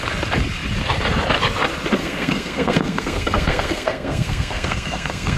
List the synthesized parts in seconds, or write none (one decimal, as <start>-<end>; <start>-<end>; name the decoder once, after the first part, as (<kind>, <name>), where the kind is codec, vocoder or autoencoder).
2.0-5.4 (codec, SNAC)